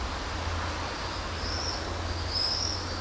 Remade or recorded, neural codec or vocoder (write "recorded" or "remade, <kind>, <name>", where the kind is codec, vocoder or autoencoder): recorded